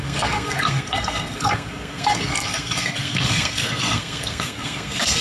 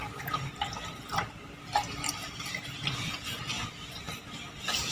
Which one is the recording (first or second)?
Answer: second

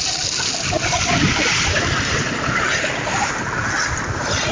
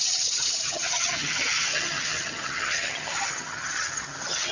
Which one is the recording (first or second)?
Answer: first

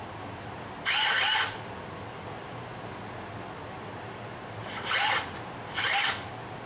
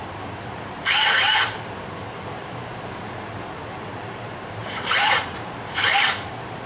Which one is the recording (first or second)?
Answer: first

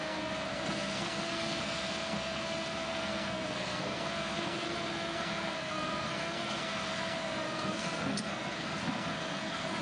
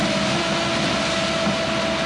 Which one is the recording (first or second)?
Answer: second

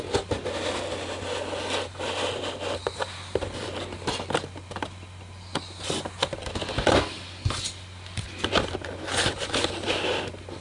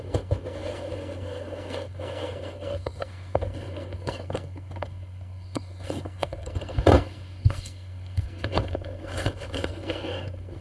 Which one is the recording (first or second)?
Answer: first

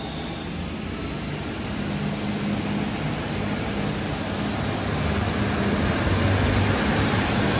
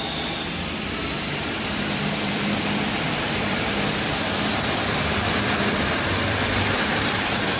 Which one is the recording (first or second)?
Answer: first